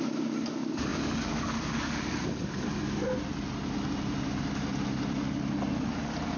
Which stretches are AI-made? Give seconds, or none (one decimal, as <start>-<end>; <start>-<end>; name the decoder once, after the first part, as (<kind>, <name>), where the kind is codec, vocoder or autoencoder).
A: 0.0-3.0 (codec, DAC)